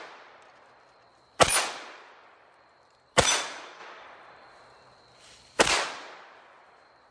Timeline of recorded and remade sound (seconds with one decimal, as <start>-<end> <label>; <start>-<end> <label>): 0.0-7.1 remade